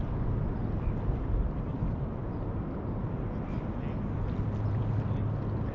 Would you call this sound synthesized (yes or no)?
no